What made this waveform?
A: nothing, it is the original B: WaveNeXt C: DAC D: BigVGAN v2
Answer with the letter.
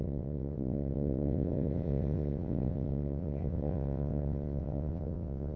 B